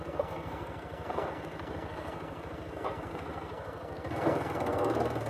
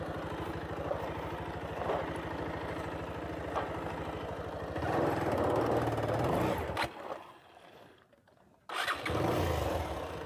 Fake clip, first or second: first